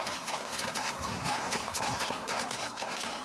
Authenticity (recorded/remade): remade